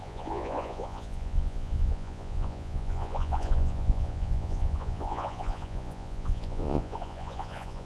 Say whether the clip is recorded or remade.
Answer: remade